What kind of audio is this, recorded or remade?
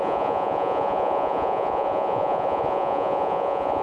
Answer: remade